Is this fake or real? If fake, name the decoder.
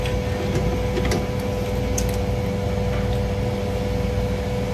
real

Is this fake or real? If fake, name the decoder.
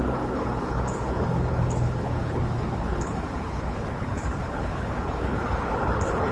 fake, codec, HILCodec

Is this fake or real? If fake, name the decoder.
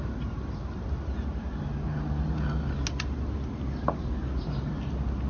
real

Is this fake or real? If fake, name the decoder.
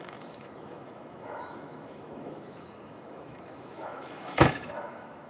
fake, autoencoder, DAC-VAE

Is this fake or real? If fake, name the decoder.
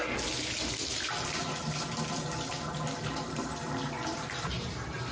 real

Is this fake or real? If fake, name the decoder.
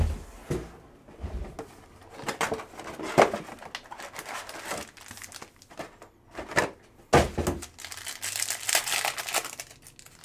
real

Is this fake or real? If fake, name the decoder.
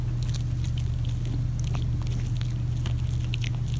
real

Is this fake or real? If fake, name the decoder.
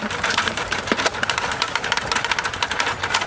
fake, vocoder, BigVGAN v2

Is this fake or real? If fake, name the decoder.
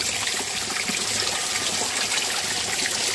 real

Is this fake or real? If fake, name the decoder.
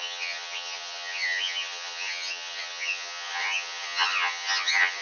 fake, vocoder, HiFi-GAN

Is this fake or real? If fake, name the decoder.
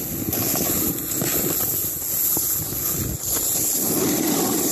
real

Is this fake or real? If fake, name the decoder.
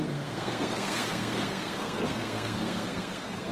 fake, codec, SNAC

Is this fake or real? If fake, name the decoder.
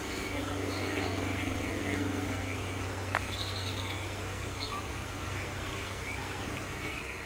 fake, codec, SNAC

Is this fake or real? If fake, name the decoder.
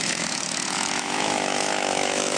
fake, autoencoder, DAC-VAE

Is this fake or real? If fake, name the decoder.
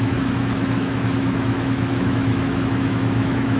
fake, autoencoder, DAC-VAE